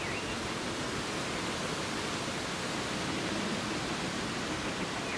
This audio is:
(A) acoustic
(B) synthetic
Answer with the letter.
A